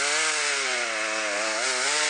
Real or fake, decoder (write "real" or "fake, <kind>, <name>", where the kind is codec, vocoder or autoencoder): real